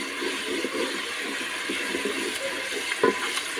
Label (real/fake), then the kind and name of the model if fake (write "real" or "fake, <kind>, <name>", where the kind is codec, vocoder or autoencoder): real